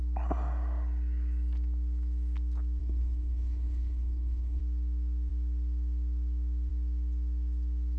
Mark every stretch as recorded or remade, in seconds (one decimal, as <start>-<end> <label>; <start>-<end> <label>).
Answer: 0.0-2.8 recorded; 2.8-4.6 remade; 4.6-8.0 recorded